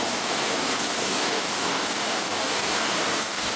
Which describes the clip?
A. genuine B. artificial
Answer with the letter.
B